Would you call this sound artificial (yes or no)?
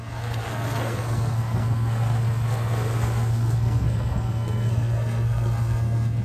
yes